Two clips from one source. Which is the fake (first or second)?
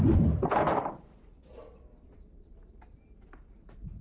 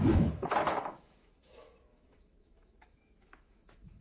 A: second